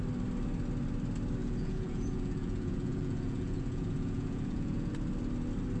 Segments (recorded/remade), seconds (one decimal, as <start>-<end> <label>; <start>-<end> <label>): 0.0-1.4 recorded; 1.4-4.9 remade; 4.9-5.8 recorded